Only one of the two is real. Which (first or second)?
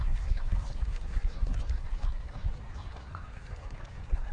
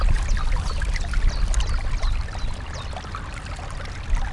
second